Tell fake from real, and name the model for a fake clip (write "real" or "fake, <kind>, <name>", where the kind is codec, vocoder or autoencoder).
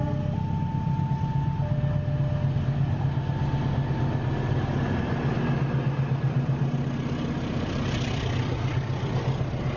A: real